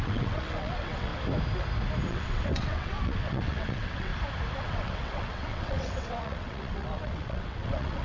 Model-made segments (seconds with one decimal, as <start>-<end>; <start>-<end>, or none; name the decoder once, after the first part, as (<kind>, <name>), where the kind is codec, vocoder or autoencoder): 0.0-1.1 (vocoder, WaveNeXt); 2.1-4.1; 4.6-8.0